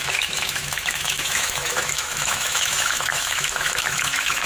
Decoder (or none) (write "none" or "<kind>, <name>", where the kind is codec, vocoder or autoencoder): autoencoder, DAC-VAE